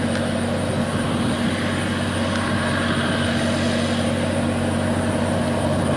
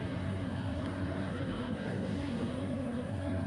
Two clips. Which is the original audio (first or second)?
first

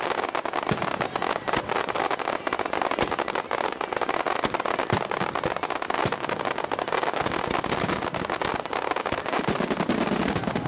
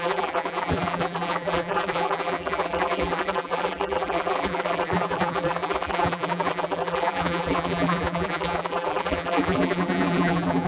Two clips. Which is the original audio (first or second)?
first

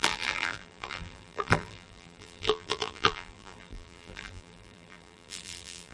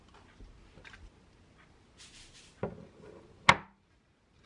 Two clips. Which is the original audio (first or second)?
second